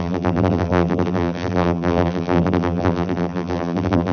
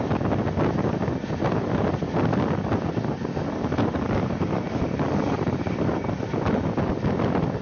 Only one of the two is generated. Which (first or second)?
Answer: first